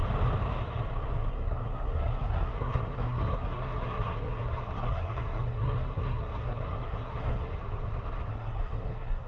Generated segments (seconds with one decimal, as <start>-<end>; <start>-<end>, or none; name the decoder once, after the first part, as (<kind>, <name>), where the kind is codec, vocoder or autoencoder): 1.3-7.5 (codec, SNAC); 8.3-9.3